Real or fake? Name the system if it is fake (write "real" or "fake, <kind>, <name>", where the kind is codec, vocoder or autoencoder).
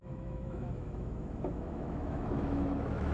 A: fake, autoencoder, DAC-VAE